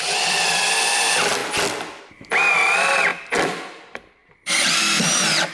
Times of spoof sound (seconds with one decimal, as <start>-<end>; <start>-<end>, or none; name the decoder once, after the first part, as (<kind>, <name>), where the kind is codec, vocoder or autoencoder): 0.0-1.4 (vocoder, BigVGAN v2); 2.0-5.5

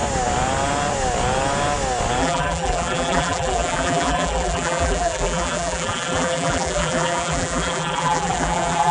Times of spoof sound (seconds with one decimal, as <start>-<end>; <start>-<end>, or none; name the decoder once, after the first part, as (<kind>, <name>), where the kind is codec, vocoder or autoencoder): 2.2-8.9 (vocoder, BigVGAN v2)

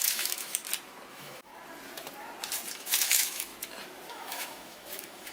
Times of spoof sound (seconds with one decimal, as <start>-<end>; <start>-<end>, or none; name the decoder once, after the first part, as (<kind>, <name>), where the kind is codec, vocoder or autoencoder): 0.0-0.6 (autoencoder, DAC-VAE); 1.1-1.5; 2.7-3.5; 4.1-5.3